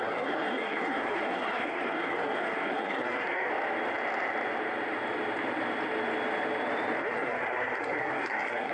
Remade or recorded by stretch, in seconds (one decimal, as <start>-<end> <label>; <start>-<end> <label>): 0.0-3.5 remade; 3.5-7.0 recorded; 7.0-8.7 remade